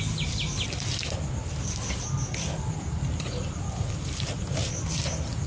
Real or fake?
real